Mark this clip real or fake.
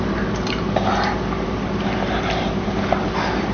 real